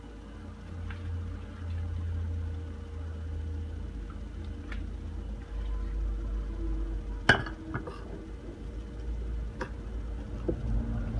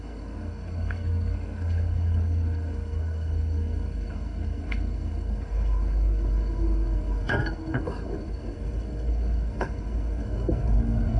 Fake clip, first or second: second